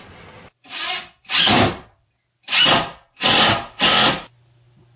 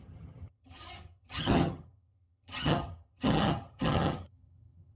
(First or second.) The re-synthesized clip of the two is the second